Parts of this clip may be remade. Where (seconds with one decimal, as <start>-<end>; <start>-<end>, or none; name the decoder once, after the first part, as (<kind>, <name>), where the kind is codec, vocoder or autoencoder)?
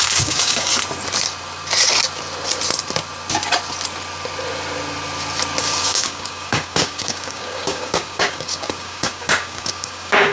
0.0-0.7 (codec, DAC); 5.6-10.3